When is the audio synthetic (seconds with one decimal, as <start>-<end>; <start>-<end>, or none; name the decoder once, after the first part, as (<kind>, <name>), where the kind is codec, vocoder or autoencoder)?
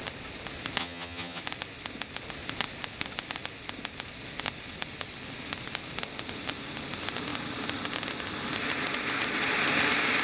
0.8-1.4 (vocoder, HiFi-GAN)